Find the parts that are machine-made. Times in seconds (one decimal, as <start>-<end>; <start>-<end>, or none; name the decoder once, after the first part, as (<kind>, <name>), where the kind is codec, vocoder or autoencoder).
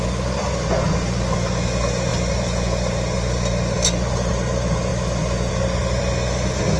none